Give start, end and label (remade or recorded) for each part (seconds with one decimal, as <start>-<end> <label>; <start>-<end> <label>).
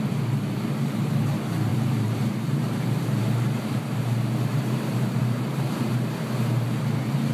0.0-1.7 recorded; 1.7-5.9 remade; 5.9-7.3 recorded